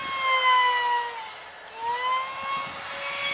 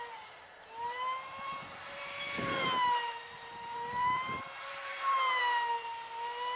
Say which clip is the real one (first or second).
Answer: first